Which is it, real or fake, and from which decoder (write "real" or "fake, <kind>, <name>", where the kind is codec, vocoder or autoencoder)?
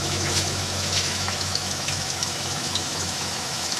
fake, autoencoder, DAC-VAE